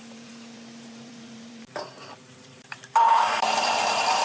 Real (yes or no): no